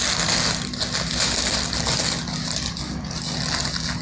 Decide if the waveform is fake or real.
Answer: real